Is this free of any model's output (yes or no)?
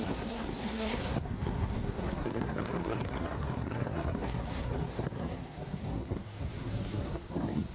no